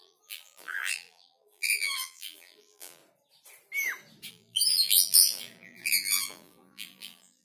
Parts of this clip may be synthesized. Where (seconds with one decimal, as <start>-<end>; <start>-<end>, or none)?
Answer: 0.0-3.0; 4.3-7.4